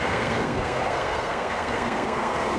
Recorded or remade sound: remade